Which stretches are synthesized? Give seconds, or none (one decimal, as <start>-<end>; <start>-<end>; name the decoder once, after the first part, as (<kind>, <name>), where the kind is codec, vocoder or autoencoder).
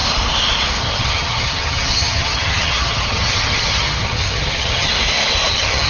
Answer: 0.8-4.9 (vocoder, HiFi-GAN); 5.5-5.9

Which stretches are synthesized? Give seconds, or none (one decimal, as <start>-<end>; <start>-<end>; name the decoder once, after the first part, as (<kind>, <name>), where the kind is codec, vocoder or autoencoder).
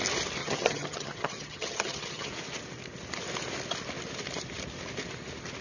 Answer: 0.4-2.3 (vocoder, HiFi-GAN)